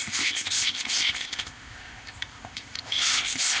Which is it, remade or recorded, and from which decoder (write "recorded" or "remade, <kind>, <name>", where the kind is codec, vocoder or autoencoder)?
remade, codec, ZipCodec